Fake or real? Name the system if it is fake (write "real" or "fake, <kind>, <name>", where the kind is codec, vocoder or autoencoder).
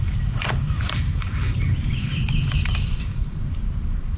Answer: fake, vocoder, BigVGAN v2